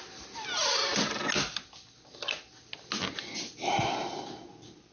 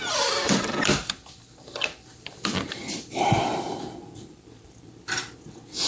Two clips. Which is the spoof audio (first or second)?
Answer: second